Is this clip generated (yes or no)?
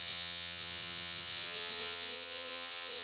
yes